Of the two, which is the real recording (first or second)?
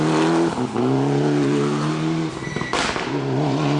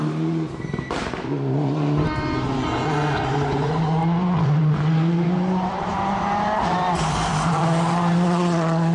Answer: first